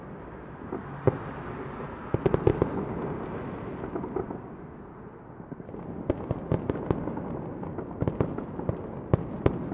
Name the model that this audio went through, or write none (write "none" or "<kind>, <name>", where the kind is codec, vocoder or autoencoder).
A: none